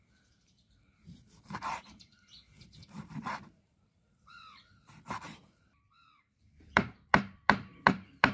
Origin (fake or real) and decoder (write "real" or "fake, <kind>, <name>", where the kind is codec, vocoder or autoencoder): fake, vocoder, BigVGAN v2